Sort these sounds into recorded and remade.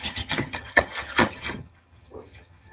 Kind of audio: remade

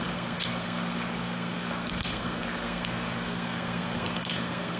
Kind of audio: remade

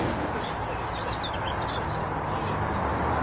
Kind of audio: recorded